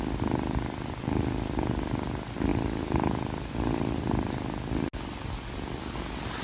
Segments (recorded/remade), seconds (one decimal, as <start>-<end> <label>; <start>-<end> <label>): 0.0-6.4 recorded